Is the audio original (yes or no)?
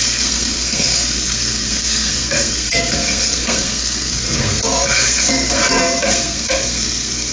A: no